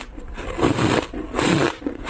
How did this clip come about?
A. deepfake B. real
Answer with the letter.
A